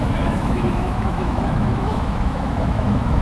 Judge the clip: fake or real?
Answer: fake